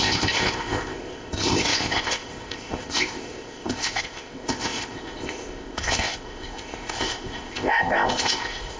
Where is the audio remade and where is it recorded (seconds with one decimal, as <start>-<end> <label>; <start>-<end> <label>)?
0.0-8.8 remade